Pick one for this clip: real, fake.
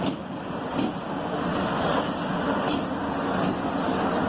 real